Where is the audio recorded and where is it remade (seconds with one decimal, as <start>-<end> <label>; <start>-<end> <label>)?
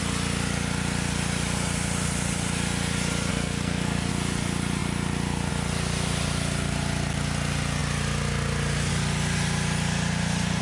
0.0-3.3 recorded; 3.3-4.1 remade; 4.1-10.6 recorded